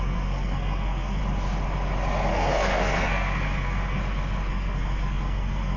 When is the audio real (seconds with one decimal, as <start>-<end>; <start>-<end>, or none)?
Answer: 1.2-2.3; 4.0-4.5